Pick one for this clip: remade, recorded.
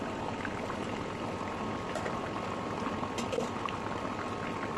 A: recorded